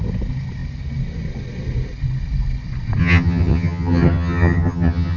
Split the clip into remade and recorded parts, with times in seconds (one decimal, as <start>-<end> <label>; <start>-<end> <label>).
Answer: 0.0-3.0 recorded; 3.0-5.2 remade